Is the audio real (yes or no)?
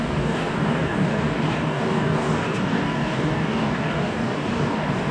no